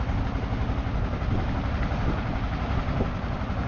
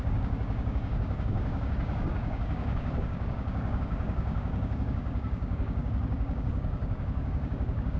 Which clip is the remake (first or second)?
second